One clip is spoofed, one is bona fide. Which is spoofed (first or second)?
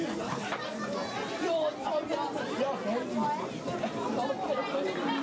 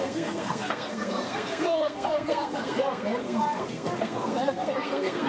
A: second